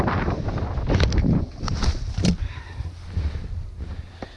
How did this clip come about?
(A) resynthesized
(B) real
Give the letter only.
B